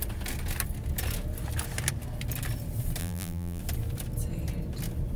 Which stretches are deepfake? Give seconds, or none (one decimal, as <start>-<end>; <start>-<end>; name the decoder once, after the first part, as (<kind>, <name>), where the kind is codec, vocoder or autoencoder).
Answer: 3.0-3.6 (vocoder, BigVGAN v2)